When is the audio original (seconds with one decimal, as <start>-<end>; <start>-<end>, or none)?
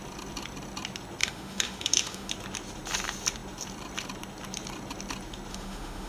0.0-1.2; 2.3-5.5